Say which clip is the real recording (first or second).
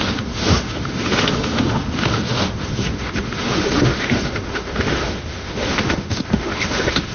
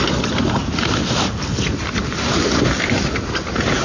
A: second